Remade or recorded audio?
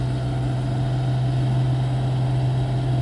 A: recorded